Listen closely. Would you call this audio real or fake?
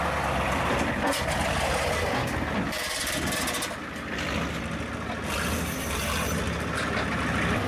real